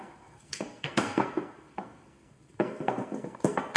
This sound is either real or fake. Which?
fake